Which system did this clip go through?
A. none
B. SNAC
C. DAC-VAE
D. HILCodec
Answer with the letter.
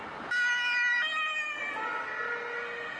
A